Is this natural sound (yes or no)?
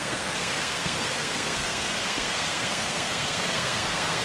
no